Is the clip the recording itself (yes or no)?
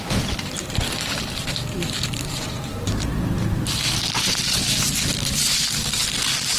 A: no